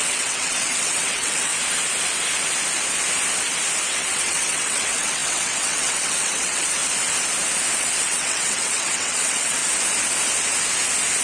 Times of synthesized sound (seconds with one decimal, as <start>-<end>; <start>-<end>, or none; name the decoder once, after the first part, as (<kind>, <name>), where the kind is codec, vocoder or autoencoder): 0.0-1.5 (vocoder, WaveNeXt); 3.9-6.8; 7.8-9.6